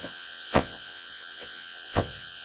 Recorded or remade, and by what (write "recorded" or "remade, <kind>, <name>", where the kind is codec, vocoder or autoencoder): remade, vocoder, WaveNeXt